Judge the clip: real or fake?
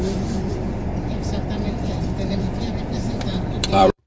fake